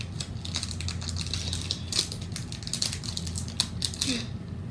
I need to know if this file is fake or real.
real